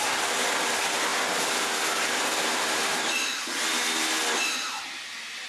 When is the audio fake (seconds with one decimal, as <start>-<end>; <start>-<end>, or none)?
none